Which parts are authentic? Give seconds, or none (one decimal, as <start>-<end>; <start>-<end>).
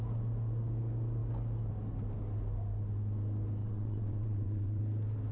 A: 0.0-3.6; 4.8-5.3